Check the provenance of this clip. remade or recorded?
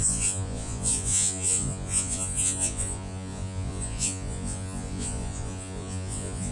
remade